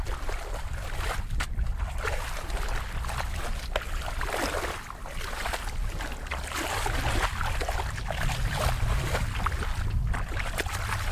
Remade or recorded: recorded